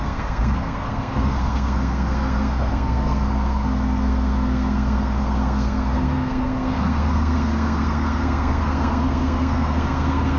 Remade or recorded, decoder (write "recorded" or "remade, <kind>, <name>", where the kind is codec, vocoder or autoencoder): remade, codec, SNAC